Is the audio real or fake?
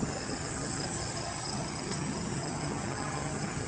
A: fake